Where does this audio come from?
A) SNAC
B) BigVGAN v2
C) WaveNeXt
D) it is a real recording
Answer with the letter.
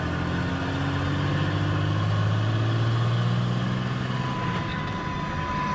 D